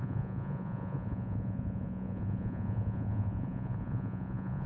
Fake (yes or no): yes